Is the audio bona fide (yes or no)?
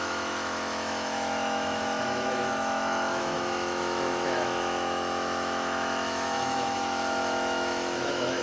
no